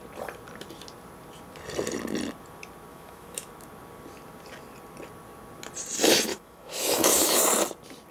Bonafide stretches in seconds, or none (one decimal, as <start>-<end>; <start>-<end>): 0.0-2.9; 3.5-6.3; 7.4-8.1

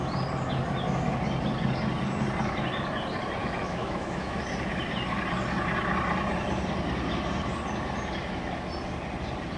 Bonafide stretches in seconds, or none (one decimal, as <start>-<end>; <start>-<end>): 0.0-3.4; 4.4-9.6